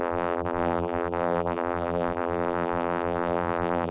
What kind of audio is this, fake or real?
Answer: fake